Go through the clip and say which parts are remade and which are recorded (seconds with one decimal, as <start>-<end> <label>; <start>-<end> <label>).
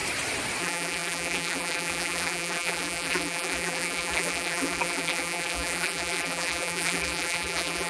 0.0-0.6 recorded; 0.6-7.9 remade